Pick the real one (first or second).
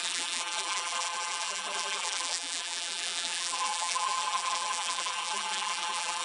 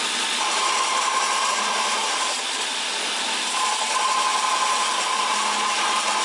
second